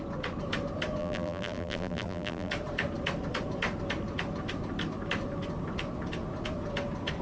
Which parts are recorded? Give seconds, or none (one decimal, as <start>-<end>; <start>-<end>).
0.0-1.0; 2.5-7.2